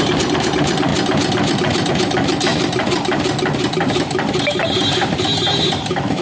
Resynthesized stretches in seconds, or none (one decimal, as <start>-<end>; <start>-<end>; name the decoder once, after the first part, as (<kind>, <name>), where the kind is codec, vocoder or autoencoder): 0.0-6.2 (vocoder, BigVGAN v2)